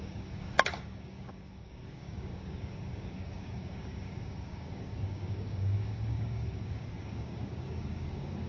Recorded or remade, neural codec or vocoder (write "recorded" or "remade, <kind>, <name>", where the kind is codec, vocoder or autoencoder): remade, codec, DAC